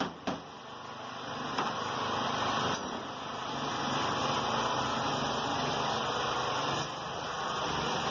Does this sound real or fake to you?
real